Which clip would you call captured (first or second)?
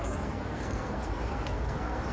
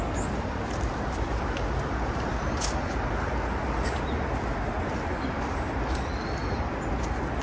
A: second